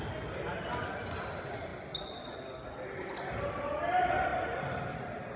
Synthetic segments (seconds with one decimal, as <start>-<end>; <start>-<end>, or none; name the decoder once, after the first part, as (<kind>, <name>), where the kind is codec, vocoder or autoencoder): none